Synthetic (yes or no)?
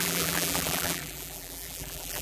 yes